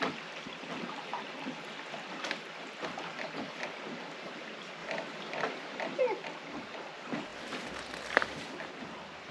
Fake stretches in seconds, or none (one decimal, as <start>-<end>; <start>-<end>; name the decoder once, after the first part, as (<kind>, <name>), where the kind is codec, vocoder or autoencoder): 0.0-4.8 (vocoder, BigVGAN v2); 6.0-7.3; 8.1-9.3